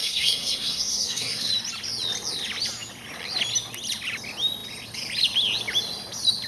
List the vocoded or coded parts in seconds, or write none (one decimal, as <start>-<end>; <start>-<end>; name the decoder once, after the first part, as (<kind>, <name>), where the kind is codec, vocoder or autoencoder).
0.0-1.5 (codec, SNAC)

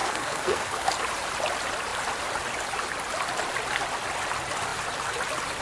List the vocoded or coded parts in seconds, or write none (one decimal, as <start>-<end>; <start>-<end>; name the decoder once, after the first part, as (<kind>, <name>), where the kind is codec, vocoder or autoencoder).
0.0-0.9 (codec, SNAC)

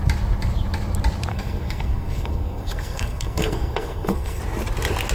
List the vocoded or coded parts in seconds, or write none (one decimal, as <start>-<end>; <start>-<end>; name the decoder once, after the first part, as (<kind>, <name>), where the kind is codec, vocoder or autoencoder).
1.3-4.4 (codec, SNAC)